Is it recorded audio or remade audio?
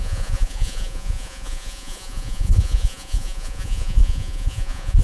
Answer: remade